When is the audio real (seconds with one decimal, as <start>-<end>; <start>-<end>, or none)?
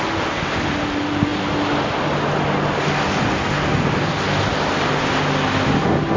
0.0-6.2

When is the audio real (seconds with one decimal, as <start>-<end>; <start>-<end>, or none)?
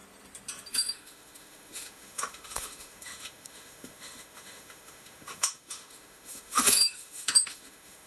0.0-0.7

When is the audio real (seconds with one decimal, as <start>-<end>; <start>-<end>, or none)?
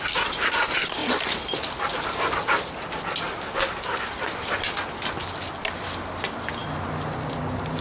0.0-7.8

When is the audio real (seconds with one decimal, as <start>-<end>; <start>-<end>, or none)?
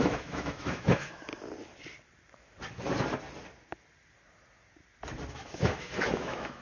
1.3-5.3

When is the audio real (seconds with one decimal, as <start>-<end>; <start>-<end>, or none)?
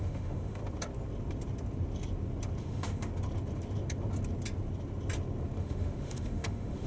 0.6-2.6; 3.1-5.6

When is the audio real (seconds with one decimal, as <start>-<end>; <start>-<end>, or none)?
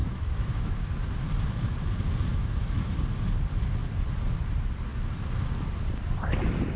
0.8-2.3; 2.9-6.8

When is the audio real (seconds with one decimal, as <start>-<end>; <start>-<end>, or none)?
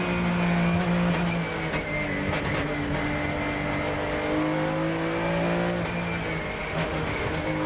0.0-6.6; 7.2-7.7